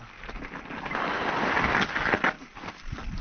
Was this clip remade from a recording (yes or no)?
no